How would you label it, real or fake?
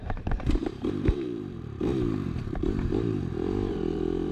fake